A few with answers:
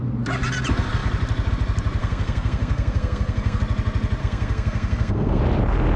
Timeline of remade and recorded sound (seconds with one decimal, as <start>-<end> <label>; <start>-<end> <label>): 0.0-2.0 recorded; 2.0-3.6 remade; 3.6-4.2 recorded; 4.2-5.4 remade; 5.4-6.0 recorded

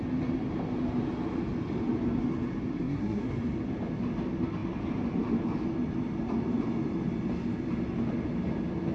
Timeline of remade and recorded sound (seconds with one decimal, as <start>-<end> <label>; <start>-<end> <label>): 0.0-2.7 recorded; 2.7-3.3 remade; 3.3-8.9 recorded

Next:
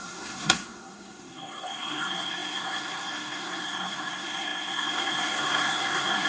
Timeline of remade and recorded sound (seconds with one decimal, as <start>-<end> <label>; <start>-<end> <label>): 0.0-6.3 remade

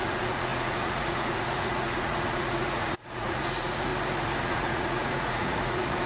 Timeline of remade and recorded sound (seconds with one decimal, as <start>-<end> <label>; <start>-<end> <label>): 0.0-3.9 remade; 3.9-4.4 recorded; 4.4-6.1 remade

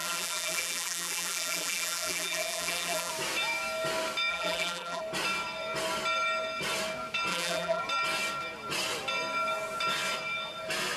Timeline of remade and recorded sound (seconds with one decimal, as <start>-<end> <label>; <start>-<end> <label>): 0.0-3.1 remade; 3.1-4.3 recorded; 4.3-5.0 remade; 5.0-7.3 recorded; 7.3-7.8 remade; 7.8-11.0 recorded

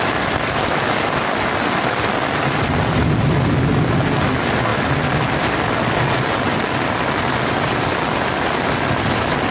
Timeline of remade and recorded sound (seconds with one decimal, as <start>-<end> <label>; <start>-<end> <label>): 0.0-9.5 recorded

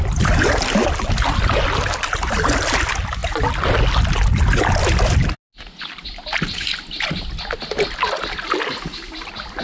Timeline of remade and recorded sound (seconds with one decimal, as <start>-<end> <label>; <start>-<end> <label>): 0.0-9.6 recorded

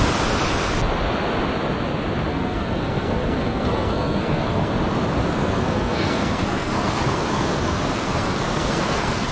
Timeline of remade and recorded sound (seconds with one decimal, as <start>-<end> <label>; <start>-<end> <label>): 0.0-2.3 recorded; 2.3-4.7 remade; 4.7-5.3 recorded; 5.3-9.3 remade